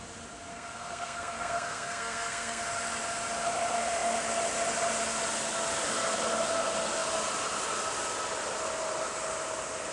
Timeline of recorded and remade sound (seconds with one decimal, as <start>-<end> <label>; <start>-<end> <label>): 0.0-0.5 recorded; 0.5-2.6 remade; 2.6-9.9 recorded